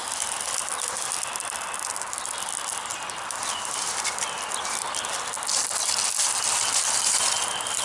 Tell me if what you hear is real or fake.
real